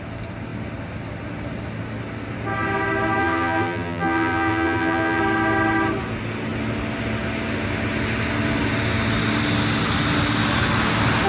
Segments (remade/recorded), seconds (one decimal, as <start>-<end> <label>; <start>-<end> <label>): 0.0-3.2 recorded; 3.2-5.2 remade; 5.2-11.3 recorded